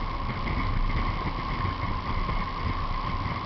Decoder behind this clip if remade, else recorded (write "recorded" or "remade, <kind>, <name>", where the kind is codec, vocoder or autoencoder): recorded